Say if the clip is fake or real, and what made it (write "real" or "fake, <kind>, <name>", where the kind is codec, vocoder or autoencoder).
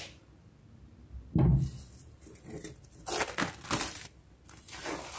real